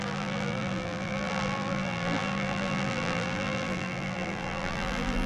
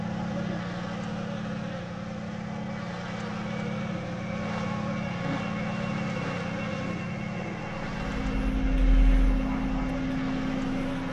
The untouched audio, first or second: second